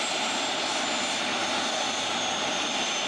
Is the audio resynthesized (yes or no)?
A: no